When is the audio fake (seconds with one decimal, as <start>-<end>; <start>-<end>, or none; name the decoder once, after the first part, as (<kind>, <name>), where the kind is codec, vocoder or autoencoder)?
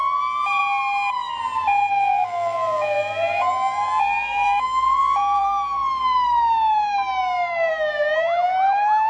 0.0-0.6 (vocoder, BigVGAN v2); 1.9-5.8; 7.7-9.1